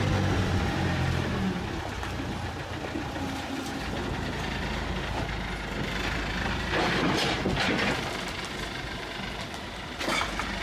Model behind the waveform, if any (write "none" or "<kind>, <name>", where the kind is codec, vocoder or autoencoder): none